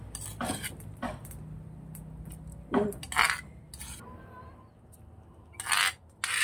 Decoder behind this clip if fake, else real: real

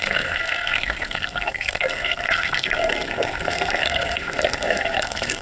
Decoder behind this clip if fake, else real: fake, codec, SNAC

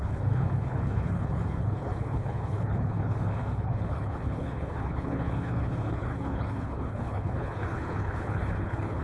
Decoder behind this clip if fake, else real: fake, codec, HILCodec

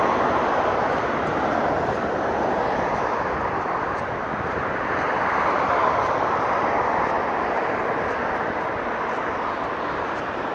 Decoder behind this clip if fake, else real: real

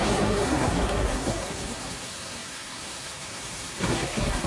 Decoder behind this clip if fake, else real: fake, codec, SNAC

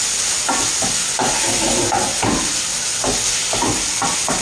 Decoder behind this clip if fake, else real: real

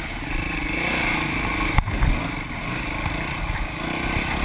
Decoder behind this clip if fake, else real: real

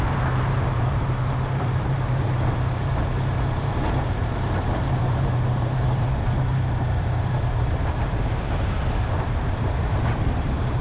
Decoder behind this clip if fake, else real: fake, vocoder, BigVGAN v2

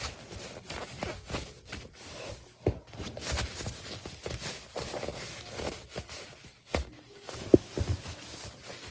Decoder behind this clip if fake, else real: real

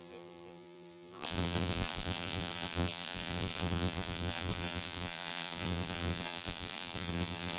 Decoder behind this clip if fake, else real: fake, vocoder, BigVGAN v2